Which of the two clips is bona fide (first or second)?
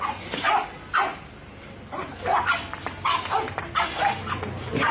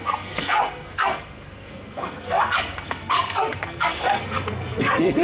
first